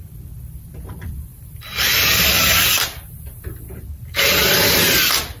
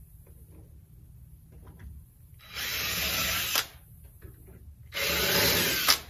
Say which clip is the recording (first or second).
second